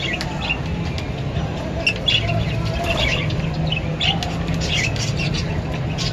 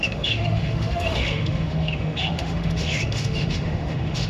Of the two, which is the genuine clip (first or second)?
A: first